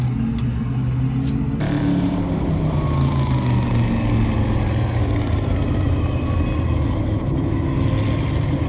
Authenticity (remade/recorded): recorded